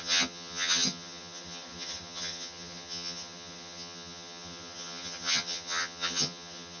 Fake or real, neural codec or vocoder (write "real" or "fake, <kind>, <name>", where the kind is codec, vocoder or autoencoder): fake, vocoder, HiFi-GAN